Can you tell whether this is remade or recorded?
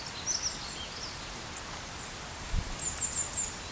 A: recorded